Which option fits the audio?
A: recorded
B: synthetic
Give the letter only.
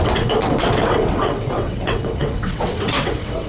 B